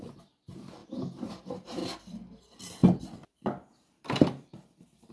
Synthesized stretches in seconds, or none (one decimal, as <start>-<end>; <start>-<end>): 0.0-1.8; 2.4-2.8; 3.9-5.1